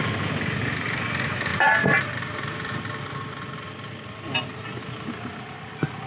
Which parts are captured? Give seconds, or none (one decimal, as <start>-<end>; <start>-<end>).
0.0-6.1